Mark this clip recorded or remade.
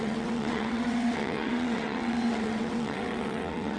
remade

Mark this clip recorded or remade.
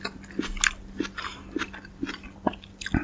recorded